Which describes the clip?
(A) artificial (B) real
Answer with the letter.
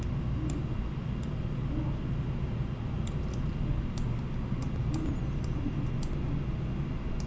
B